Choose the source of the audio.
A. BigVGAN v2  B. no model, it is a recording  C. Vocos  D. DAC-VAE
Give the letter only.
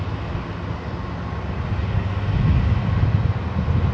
B